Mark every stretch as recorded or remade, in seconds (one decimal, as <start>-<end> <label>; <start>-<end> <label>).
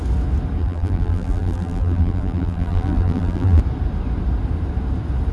0.0-0.6 recorded; 0.6-3.6 remade; 3.6-5.3 recorded